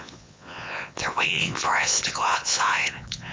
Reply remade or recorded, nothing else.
remade